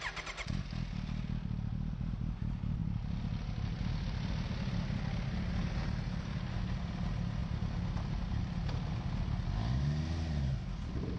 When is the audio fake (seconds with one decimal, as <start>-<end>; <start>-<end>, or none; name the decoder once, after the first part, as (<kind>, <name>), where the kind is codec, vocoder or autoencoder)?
none